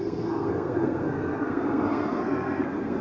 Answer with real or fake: fake